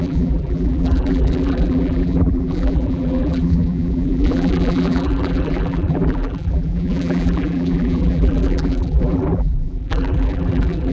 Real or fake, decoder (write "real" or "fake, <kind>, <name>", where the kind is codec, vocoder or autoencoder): fake, vocoder, BigVGAN v2